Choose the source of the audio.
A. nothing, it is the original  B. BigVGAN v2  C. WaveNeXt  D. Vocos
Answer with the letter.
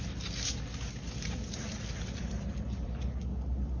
A